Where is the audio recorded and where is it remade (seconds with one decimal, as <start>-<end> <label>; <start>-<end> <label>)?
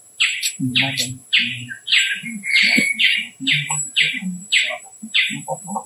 0.0-5.9 recorded